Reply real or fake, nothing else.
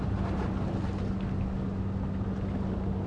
real